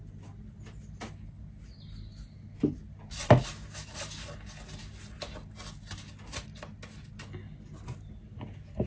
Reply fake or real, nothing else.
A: real